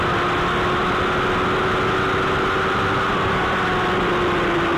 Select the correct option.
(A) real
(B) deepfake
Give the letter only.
A